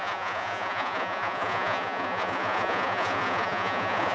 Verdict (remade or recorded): remade